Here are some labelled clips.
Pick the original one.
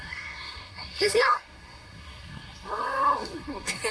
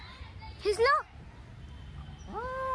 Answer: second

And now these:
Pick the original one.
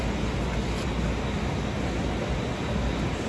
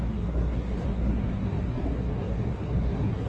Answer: first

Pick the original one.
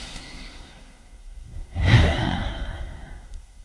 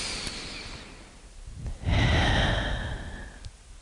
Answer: second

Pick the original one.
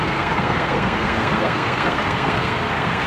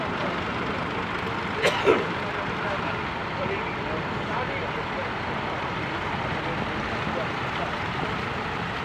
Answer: second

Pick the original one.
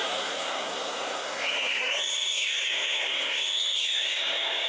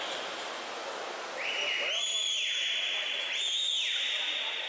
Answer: second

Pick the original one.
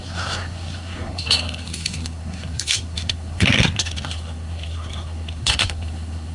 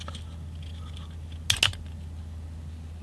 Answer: second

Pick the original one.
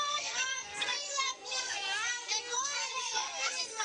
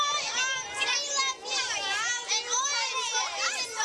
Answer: second